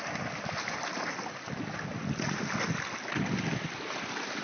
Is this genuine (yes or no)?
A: yes